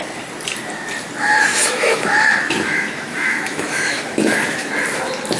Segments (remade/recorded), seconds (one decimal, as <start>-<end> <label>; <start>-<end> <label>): 0.0-1.5 recorded; 1.5-4.7 remade; 4.7-5.4 recorded